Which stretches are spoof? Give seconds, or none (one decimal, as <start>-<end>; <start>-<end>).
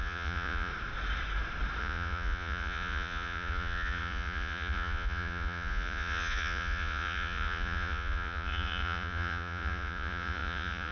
0.0-0.7; 1.8-10.9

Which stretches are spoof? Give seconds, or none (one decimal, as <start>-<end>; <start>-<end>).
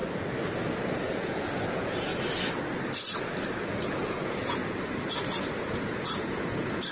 0.7-2.1; 3.6-4.6; 5.4-6.9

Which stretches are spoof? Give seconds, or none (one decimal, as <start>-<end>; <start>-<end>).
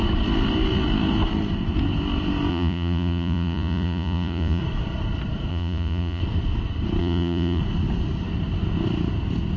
2.5-4.6; 5.5-6.2; 7.0-7.6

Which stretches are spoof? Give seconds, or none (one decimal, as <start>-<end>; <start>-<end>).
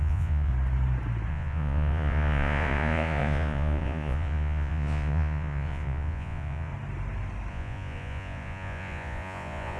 0.0-0.5; 1.3-6.7; 7.5-9.8